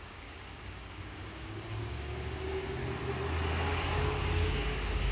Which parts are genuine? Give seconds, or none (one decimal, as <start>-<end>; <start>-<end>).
2.8-3.5